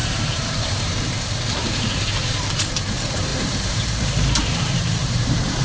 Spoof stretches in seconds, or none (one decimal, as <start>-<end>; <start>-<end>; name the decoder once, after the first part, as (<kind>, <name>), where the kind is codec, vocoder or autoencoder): 0.0-5.6 (vocoder, BigVGAN v2)